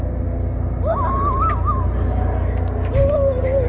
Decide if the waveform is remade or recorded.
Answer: recorded